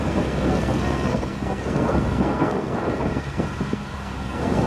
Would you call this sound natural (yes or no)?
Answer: no